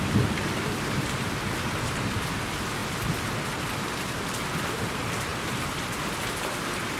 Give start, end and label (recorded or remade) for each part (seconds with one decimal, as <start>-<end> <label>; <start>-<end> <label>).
0.0-2.8 remade; 2.8-4.0 recorded; 4.0-5.3 remade; 5.3-7.0 recorded